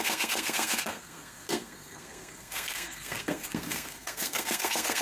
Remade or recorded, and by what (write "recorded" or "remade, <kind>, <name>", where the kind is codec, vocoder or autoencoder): remade, codec, SNAC